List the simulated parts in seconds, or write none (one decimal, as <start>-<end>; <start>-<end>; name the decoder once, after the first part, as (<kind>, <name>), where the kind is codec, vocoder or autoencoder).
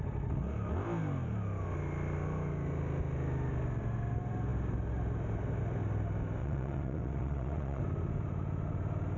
6.4-7.8 (vocoder, WaveNeXt)